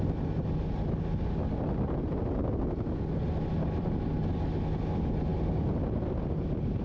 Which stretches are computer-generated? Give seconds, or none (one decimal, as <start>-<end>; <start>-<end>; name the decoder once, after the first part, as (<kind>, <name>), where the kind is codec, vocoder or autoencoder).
none